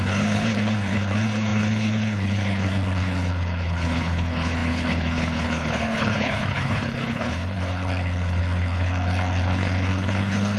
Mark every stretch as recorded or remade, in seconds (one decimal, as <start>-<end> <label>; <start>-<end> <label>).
0.0-10.6 remade